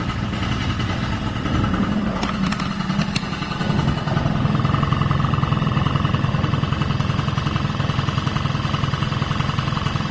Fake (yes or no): no